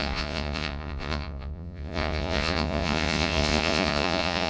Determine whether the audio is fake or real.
fake